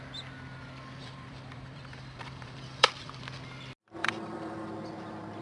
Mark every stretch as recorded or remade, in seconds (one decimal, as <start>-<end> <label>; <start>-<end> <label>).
0.0-1.0 recorded; 1.0-3.2 remade; 3.2-4.0 recorded; 4.0-4.7 remade; 4.7-5.4 recorded